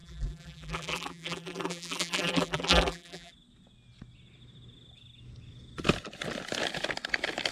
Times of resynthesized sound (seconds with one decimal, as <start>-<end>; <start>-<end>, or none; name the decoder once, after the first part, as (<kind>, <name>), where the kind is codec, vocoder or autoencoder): 0.0-3.3 (vocoder, BigVGAN v2)